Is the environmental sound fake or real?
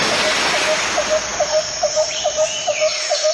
real